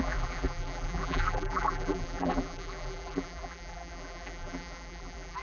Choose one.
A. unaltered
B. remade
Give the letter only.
B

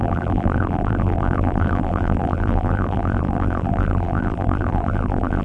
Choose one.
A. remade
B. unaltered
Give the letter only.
A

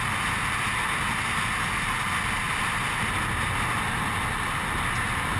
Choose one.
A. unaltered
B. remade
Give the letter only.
A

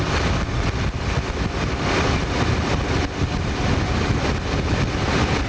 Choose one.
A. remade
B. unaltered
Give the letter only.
B